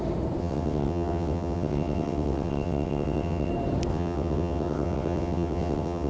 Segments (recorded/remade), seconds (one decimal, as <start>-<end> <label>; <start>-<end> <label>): 0.0-0.4 recorded; 0.4-3.5 remade; 3.5-3.9 recorded; 3.9-6.1 remade